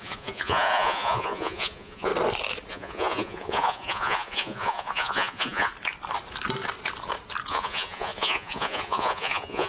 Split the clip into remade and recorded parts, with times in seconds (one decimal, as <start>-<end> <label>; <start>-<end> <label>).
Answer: 0.0-2.1 remade; 2.1-2.7 recorded; 2.7-5.7 remade; 5.7-7.5 recorded; 7.5-9.7 remade